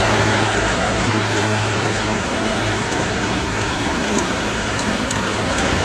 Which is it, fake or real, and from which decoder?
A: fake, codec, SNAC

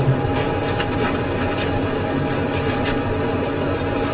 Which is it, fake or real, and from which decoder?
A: real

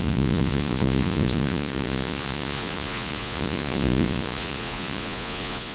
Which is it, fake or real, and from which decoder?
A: fake, vocoder, Vocos